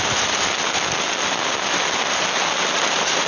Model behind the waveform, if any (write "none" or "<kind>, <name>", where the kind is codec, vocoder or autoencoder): none